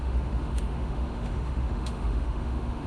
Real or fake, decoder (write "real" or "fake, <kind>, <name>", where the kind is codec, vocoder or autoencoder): fake, autoencoder, DAC-VAE